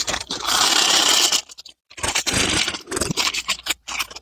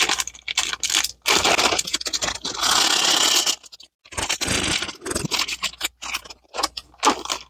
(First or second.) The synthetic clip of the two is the first